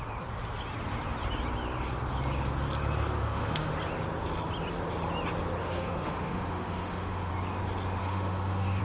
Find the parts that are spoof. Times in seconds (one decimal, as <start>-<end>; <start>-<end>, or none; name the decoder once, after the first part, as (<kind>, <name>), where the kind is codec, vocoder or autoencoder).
3.2-3.7 (autoencoder, DAC-VAE); 5.6-7.3; 8.0-8.8